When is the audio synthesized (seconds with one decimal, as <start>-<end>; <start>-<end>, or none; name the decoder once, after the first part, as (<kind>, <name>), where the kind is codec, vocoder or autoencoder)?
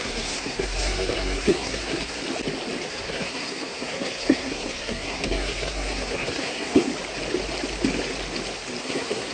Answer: 0.0-2.2 (codec, SNAC); 2.9-6.9; 8.8-9.3